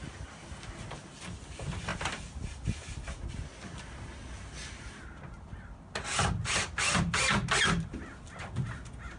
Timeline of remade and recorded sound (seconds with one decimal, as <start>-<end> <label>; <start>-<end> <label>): 0.0-9.2 recorded